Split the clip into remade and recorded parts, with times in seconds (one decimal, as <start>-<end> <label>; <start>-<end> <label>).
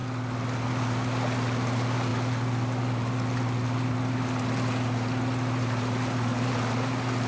0.0-7.3 recorded